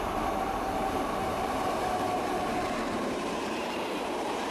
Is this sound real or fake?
fake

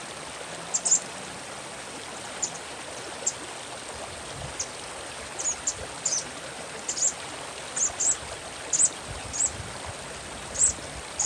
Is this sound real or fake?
real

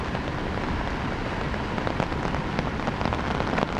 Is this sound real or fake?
real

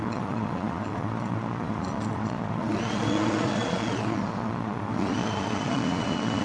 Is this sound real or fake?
fake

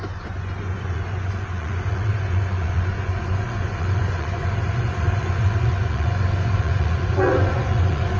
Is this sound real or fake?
fake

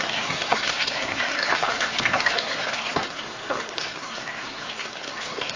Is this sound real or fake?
fake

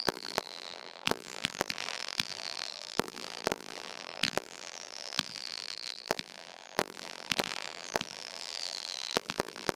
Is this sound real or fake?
fake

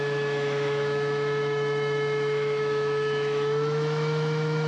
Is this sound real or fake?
fake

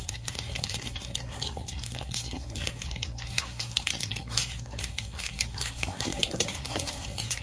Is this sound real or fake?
fake